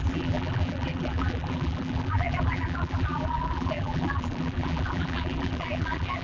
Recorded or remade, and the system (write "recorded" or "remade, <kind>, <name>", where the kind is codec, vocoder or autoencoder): remade, vocoder, BigVGAN v2